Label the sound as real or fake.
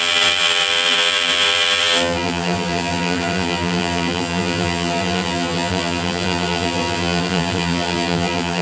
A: fake